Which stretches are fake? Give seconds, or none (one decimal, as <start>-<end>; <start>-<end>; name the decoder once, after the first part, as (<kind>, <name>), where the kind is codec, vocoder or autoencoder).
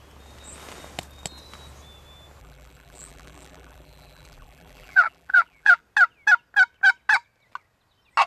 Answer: 2.4-5.8 (vocoder, BigVGAN v2)